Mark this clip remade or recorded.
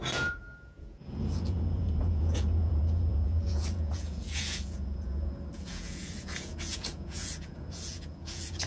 remade